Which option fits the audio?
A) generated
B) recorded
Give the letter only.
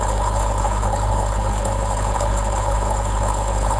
A